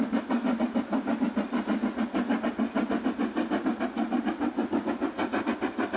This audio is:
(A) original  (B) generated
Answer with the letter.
A